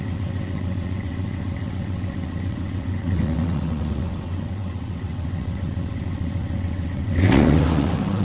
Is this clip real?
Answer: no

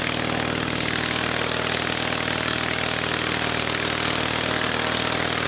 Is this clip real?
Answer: yes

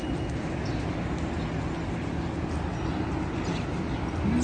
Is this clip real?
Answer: yes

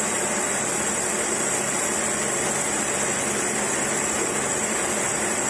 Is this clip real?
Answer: yes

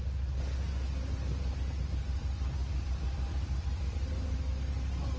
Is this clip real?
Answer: yes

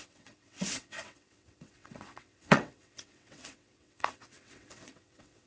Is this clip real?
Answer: no